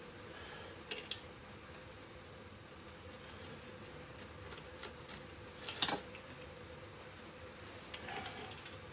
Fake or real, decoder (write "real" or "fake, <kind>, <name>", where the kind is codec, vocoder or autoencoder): real